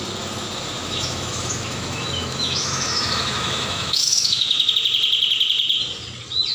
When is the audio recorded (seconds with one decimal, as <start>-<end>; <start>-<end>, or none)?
0.0-0.8; 4.7-6.5